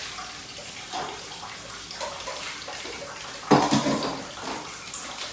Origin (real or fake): real